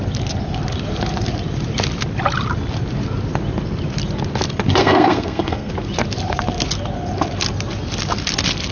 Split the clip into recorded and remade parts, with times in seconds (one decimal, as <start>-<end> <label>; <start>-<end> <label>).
0.0-4.8 recorded; 4.8-5.7 remade; 5.7-8.7 recorded